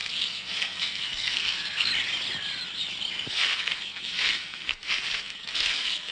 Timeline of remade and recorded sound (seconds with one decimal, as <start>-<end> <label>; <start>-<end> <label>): 0.0-1.9 remade; 1.9-3.3 recorded; 3.3-6.1 remade